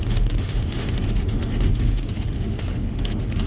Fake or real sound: fake